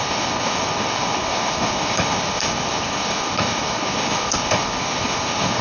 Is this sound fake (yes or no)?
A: yes